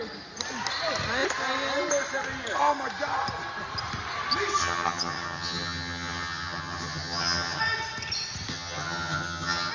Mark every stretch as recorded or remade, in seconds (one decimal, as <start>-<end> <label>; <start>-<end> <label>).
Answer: 0.0-4.6 recorded; 4.6-7.6 remade; 7.6-8.5 recorded; 8.5-9.7 remade